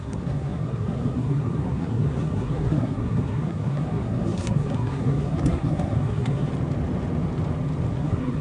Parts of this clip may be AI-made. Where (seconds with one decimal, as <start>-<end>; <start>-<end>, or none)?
0.0-6.5; 7.9-8.4